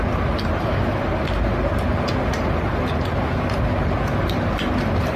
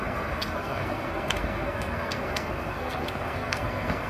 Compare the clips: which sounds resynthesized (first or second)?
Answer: second